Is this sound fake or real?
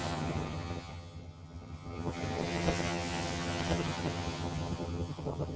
fake